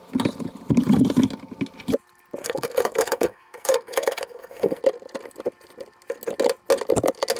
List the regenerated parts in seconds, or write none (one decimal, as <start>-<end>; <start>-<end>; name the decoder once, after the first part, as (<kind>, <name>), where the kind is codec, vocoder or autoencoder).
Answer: 2.4-4.8 (codec, SNAC)